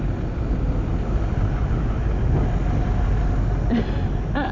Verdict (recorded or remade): recorded